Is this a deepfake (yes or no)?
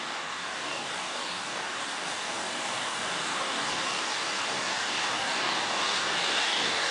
yes